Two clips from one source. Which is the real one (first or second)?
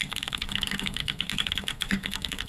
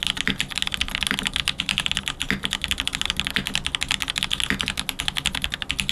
second